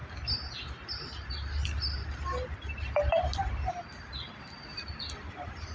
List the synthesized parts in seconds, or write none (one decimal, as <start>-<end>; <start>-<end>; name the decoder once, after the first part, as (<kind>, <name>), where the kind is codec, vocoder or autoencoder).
none